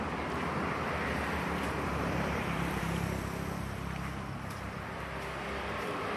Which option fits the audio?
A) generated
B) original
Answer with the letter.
A